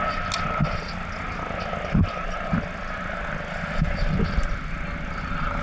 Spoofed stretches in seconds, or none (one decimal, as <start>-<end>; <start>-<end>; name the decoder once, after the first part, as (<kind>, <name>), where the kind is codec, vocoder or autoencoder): none